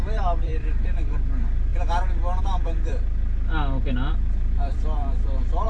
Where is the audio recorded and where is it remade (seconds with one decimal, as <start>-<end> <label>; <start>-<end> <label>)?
0.0-2.9 remade; 2.9-4.1 recorded; 4.1-5.7 remade